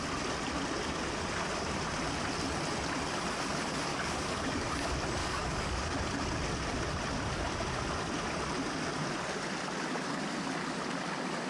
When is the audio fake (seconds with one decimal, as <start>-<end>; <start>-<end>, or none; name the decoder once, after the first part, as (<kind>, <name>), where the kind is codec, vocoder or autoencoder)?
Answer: 3.9-4.7 (codec, DAC); 5.2-6.0